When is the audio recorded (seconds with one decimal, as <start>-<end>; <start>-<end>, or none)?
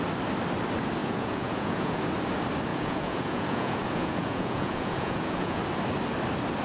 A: 0.0-1.0; 2.0-2.7; 5.6-6.6